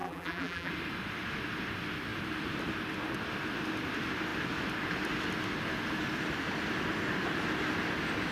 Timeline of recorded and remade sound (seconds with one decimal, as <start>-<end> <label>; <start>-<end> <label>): 0.0-0.7 remade; 0.7-8.3 recorded